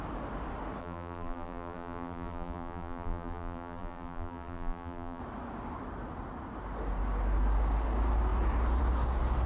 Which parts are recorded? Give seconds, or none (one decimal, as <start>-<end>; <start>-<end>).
0.0-0.8; 5.2-9.5